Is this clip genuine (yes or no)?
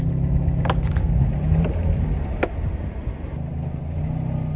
yes